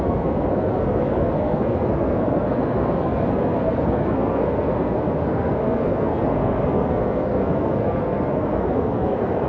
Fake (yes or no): yes